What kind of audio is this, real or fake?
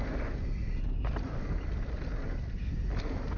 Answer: real